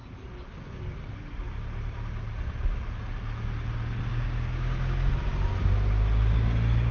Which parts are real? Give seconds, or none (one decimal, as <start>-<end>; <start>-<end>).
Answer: 0.0-4.1; 5.0-6.9